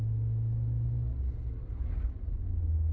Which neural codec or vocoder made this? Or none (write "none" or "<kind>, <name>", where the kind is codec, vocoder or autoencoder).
none